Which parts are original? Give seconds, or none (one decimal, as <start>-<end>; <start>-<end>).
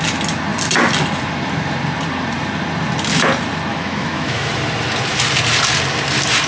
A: 0.0-3.7; 4.5-6.5